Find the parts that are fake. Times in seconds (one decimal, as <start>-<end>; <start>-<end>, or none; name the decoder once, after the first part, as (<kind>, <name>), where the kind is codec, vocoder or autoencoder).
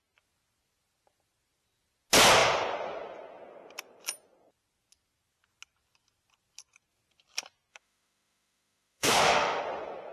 7.7-9.6 (autoencoder, DAC-VAE)